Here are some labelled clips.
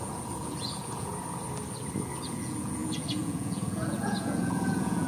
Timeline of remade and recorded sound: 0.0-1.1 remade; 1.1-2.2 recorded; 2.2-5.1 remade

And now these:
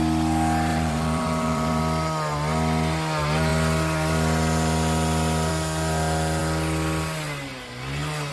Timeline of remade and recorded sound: 0.0-0.7 recorded; 0.7-1.8 remade; 1.8-8.3 recorded